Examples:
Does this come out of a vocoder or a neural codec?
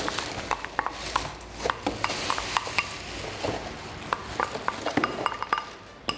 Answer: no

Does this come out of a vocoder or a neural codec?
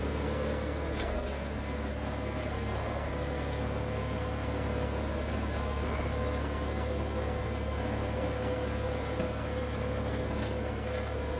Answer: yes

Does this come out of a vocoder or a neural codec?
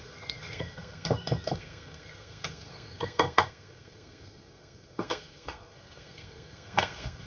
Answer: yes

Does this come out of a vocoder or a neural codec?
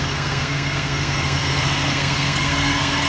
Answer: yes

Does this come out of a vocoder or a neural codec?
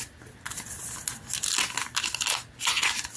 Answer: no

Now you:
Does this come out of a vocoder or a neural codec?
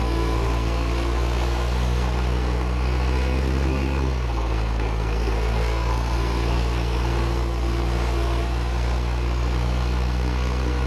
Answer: yes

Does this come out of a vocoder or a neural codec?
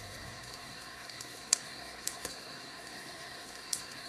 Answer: yes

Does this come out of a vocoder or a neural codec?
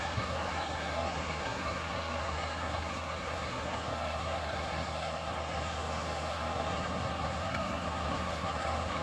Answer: yes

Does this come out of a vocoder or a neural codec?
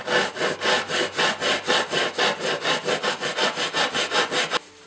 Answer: no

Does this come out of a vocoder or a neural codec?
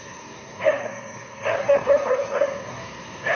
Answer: yes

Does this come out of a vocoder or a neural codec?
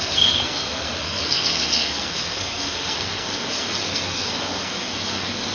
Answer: yes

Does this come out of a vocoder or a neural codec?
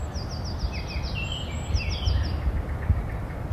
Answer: no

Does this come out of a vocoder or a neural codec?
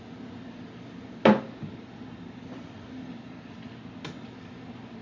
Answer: no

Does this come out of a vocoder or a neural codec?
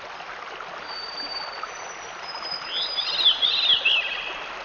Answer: no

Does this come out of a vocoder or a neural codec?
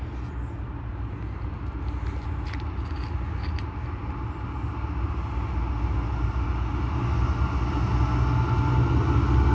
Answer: no